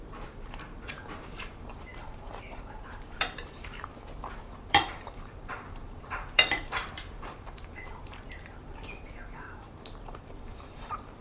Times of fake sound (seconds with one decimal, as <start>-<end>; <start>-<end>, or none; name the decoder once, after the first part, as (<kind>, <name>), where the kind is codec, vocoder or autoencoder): 0.0-3.9 (vocoder, BigVGAN v2); 4.4-11.2